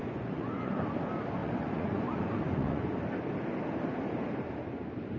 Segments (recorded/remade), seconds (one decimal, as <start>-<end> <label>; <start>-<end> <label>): 0.0-0.7 remade; 0.7-1.4 recorded; 1.4-3.0 remade; 3.0-5.2 recorded